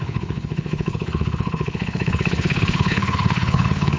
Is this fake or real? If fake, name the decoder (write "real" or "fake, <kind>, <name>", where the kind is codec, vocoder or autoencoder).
fake, codec, HILCodec